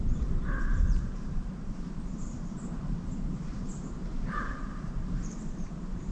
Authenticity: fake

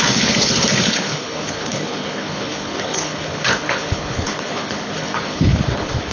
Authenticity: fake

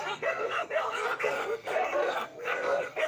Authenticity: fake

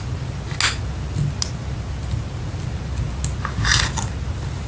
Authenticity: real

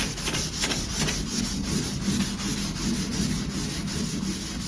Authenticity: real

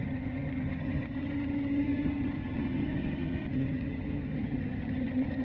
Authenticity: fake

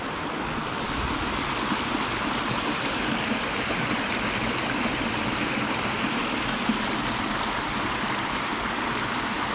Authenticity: real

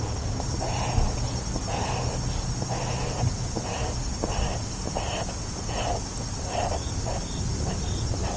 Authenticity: real